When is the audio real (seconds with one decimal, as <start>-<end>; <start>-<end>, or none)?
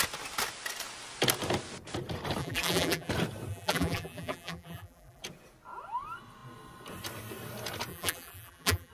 0.0-2.4; 3.1-3.5; 5.2-7.9